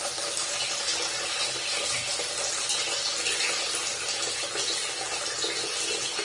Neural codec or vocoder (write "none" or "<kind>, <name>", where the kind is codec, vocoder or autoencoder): none